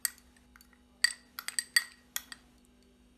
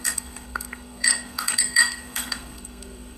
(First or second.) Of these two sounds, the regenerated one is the second